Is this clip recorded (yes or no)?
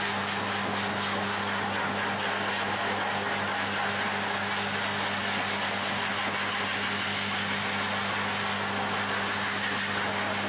yes